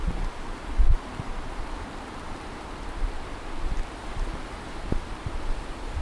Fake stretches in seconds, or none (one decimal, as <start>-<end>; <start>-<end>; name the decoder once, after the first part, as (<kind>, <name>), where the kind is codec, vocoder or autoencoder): 0.0-4.0 (vocoder, BigVGAN v2); 4.8-6.0